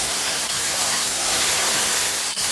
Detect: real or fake fake